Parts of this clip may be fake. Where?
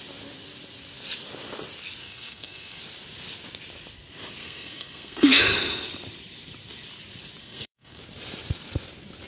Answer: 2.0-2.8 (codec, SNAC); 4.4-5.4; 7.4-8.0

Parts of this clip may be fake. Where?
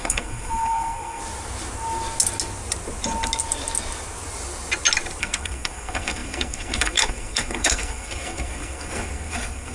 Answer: 0.0-1.2 (codec, SNAC); 5.2-9.7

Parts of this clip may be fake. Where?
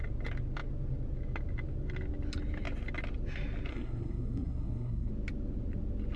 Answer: 3.7-5.1 (codec, SNAC)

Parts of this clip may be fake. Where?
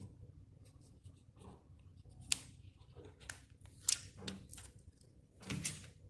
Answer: none